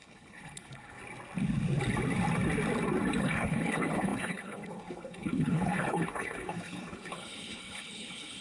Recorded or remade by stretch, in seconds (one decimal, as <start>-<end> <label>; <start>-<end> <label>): 0.0-1.0 remade; 1.0-3.2 recorded; 3.2-8.4 remade